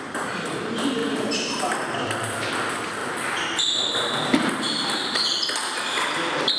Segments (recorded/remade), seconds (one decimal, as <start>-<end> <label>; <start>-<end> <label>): 0.0-1.0 recorded; 1.0-2.5 remade; 2.5-3.0 recorded; 3.0-5.2 remade; 5.2-6.6 recorded